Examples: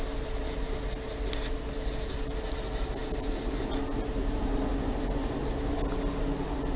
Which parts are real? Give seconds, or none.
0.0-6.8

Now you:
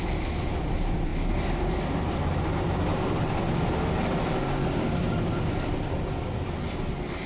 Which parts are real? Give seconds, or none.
1.1-5.0

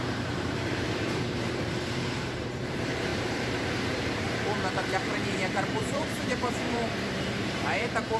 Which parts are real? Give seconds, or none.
none

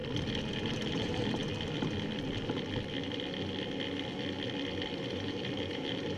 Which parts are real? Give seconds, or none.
0.0-0.5; 1.4-5.1